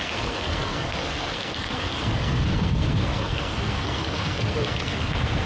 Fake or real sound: fake